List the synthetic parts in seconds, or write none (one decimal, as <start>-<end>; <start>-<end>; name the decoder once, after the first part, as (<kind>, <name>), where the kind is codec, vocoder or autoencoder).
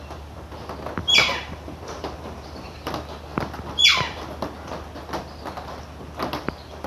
1.0-2.9 (vocoder, BigVGAN v2)